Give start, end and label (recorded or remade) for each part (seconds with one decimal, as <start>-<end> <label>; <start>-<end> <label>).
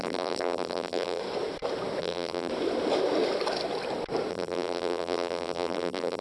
0.0-1.2 remade; 1.2-2.0 recorded; 2.0-2.5 remade; 2.5-4.3 recorded; 4.3-6.2 remade